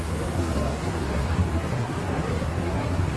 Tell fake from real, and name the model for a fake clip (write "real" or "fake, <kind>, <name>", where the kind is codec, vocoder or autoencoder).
fake, codec, SNAC